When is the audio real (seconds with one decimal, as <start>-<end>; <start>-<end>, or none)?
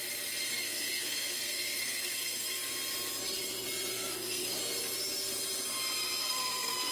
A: 0.0-0.5; 2.7-3.9; 4.6-6.2